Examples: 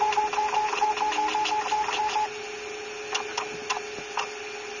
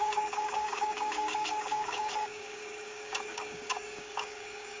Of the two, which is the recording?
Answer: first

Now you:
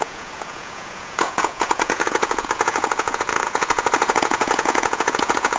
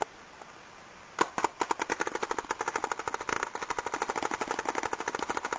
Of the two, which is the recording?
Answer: second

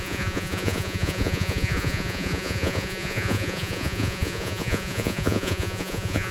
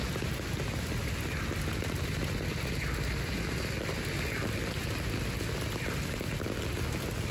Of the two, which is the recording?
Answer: second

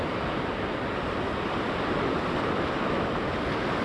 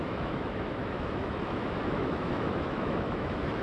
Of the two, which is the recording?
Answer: first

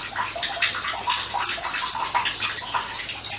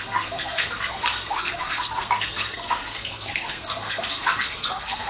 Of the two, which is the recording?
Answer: first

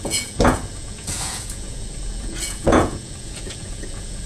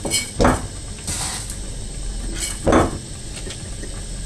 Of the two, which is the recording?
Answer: second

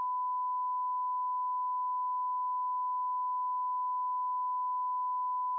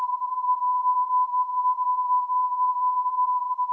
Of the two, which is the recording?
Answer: first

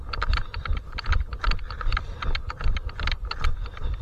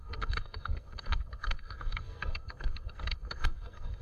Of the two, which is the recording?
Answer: first